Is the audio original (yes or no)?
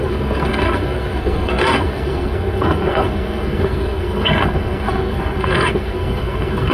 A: no